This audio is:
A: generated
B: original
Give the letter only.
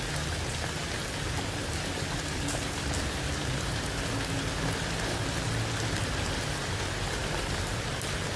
B